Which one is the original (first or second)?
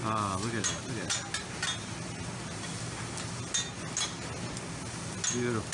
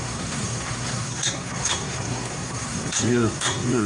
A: first